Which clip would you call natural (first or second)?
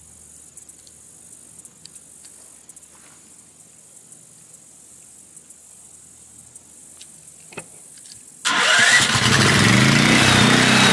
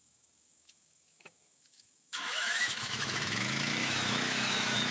first